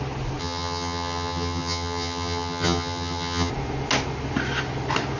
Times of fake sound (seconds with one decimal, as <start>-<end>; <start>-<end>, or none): 0.4-3.5